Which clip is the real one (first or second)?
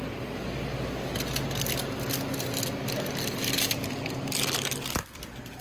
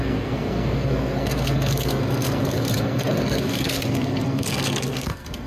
first